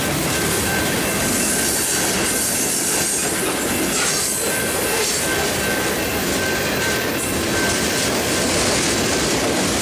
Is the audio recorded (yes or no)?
yes